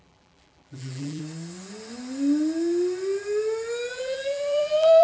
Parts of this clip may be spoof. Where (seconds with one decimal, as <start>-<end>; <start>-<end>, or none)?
0.0-1.2; 3.9-5.0